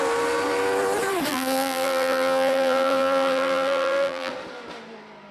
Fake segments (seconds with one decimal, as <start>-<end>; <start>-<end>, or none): 1.3-4.3